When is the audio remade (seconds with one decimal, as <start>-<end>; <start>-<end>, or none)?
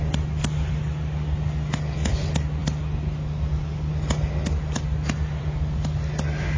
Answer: none